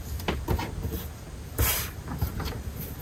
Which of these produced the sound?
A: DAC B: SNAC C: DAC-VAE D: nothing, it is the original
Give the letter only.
D